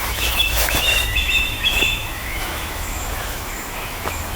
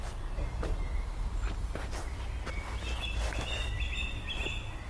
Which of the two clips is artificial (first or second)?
first